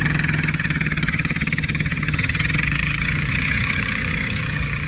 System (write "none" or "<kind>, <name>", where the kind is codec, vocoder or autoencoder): vocoder, HiFi-GAN